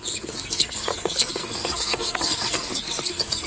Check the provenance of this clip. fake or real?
fake